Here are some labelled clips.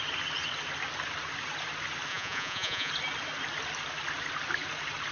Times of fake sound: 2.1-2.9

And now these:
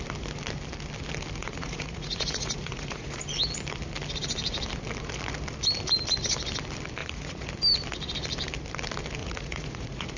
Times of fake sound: 1.4-3.2; 7.0-7.5; 9.2-10.2

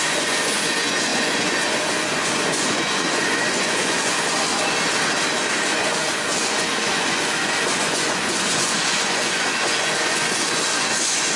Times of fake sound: 0.0-4.5; 5.5-11.4

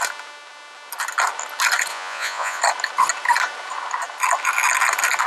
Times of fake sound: 1.9-2.6

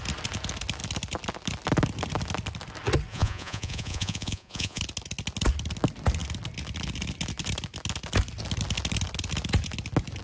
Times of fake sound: 3.1-4.8